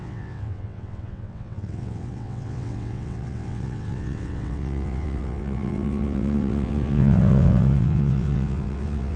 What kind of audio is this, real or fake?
fake